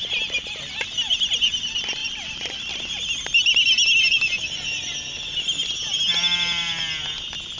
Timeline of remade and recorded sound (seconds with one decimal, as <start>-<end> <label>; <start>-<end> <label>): 0.0-2.0 recorded; 2.0-2.7 remade; 2.7-7.6 recorded